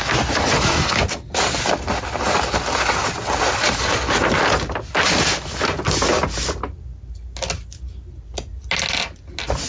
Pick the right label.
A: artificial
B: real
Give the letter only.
B